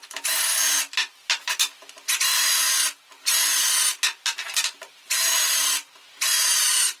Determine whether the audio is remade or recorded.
recorded